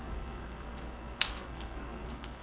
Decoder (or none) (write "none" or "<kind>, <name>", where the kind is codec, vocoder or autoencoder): codec, SNAC